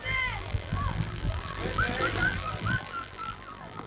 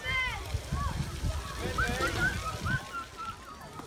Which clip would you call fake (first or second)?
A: first